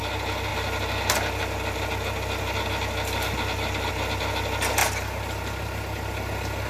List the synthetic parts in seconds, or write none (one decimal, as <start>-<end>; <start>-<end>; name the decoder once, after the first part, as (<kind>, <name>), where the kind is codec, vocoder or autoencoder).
none